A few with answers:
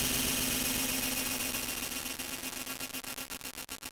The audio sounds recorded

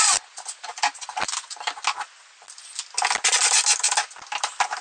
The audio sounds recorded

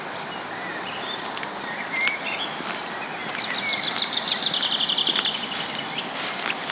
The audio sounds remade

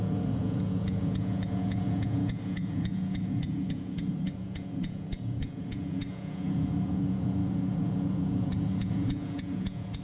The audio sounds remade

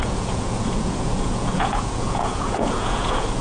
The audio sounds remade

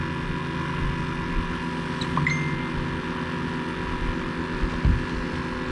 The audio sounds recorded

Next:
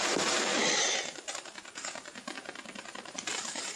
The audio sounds remade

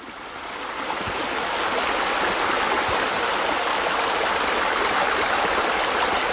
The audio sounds recorded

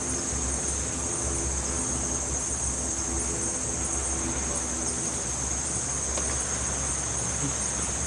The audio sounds recorded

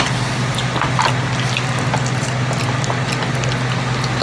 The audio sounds recorded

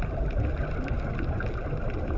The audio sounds recorded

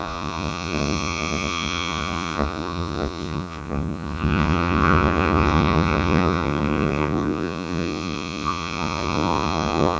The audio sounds remade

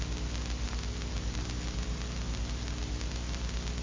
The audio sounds recorded